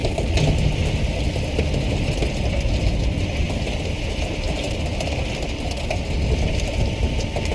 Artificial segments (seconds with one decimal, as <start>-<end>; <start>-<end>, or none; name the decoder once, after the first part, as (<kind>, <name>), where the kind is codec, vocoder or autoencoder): none